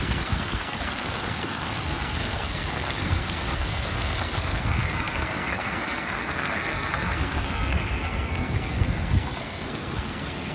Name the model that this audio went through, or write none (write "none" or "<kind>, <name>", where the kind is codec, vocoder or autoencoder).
codec, SNAC